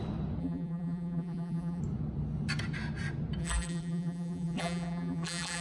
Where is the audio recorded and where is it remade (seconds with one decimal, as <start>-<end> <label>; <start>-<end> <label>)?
0.0-0.4 recorded; 0.4-1.8 remade; 1.8-3.4 recorded; 3.4-5.6 remade